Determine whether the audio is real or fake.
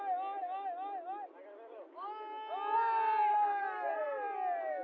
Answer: real